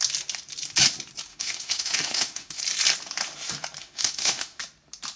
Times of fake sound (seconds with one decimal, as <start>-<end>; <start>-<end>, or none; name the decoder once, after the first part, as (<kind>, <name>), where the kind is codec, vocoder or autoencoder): 1.3-2.6 (autoencoder, DAC-VAE); 3.8-4.6